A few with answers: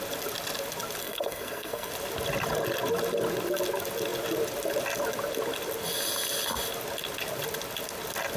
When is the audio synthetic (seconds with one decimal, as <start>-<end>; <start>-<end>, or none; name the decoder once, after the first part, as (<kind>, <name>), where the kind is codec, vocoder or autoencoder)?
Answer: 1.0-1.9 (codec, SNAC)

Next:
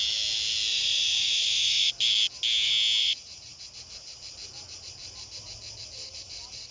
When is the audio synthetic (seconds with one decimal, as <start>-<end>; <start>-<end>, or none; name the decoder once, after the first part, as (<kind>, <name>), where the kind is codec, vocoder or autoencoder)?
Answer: 0.7-1.9 (vocoder, Vocos); 3.0-3.6

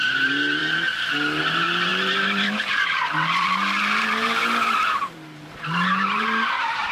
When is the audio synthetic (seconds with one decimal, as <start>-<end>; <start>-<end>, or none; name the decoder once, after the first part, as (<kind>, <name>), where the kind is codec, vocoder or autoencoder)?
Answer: 0.0-0.6 (vocoder, BigVGAN v2); 1.4-6.9

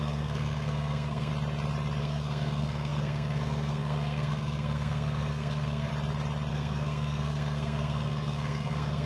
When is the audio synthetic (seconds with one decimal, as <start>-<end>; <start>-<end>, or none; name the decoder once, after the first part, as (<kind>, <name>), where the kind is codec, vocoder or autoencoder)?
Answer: 0.0-1.3 (codec, SNAC); 2.0-5.9; 6.5-9.1

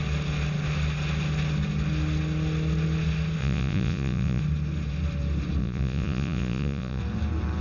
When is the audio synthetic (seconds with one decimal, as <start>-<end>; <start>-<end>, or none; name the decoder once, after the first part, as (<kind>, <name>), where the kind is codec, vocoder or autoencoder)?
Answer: 3.4-4.4 (vocoder, Vocos); 5.6-7.0

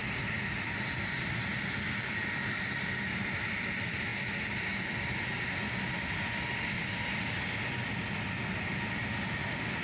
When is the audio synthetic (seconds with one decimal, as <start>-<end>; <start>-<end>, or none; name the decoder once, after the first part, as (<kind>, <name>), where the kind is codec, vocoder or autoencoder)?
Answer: none